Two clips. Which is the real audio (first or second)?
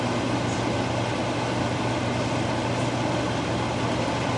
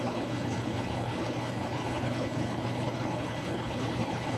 first